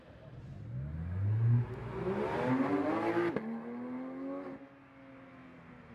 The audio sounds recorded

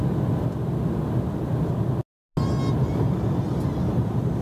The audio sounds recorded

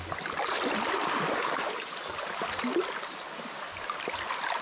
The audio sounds recorded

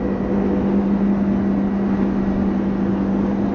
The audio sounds recorded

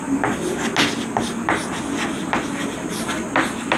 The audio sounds recorded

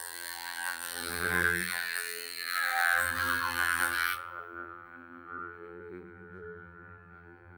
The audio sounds remade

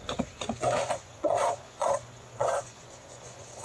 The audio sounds remade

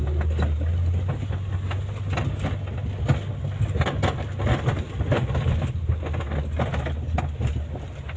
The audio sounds recorded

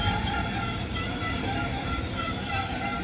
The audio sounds recorded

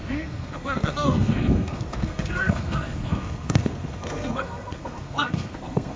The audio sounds remade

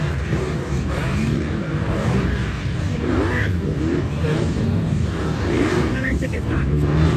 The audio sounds remade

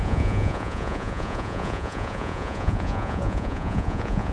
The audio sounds remade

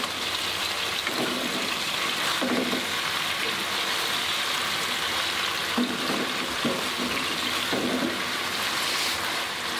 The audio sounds recorded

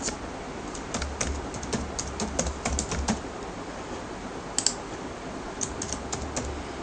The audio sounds recorded